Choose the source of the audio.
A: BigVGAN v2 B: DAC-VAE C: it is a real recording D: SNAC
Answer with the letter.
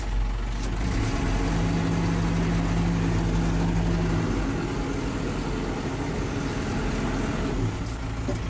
C